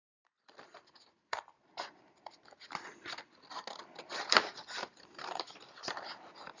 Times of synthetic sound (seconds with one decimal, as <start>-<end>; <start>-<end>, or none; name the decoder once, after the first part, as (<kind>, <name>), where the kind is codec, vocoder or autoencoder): 0.0-2.3 (vocoder, BigVGAN v2); 3.8-6.6